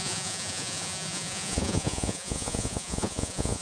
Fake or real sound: fake